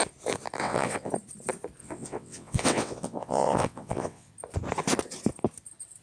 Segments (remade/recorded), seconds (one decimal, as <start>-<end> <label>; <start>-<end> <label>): 0.0-0.6 recorded; 0.6-1.1 remade; 1.1-1.8 recorded; 1.8-4.3 remade; 4.3-6.0 recorded